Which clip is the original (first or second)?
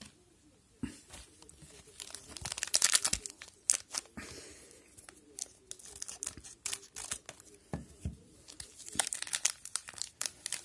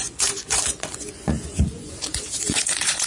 first